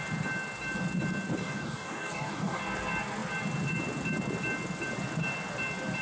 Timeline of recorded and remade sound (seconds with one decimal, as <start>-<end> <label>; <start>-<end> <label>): 0.0-1.4 recorded; 1.4-2.6 remade; 2.6-6.0 recorded